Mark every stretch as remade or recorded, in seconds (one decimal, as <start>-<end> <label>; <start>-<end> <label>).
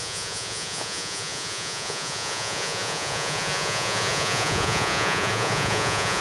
0.0-6.2 remade